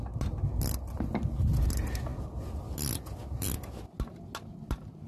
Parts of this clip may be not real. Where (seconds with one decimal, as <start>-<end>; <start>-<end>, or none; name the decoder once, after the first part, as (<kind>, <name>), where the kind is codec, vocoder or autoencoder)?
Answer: none